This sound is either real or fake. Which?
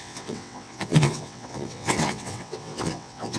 fake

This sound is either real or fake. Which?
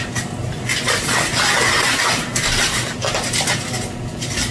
real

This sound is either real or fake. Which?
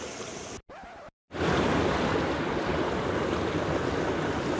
real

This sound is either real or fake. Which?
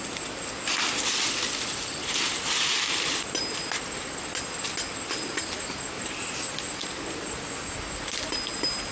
real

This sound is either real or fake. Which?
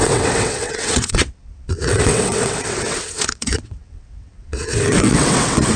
fake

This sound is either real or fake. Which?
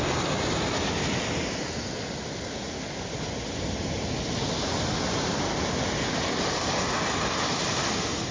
real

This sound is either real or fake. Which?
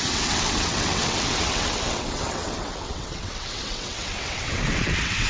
fake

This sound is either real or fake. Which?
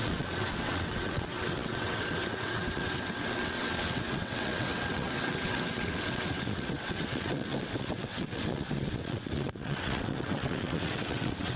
fake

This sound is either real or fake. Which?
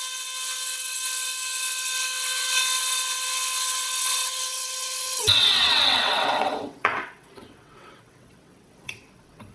fake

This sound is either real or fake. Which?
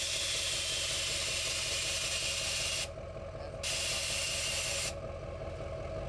real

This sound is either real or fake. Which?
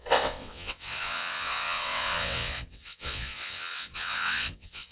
fake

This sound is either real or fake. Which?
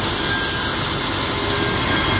real